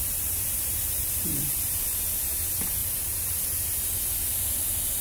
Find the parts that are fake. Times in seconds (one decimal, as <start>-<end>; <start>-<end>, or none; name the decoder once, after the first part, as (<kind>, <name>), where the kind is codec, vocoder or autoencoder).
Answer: 0.0-1.8 (vocoder, BigVGAN v2); 2.8-3.7